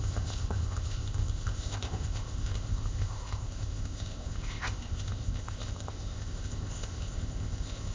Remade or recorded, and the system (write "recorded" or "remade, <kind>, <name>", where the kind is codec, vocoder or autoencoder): remade, codec, ZipCodec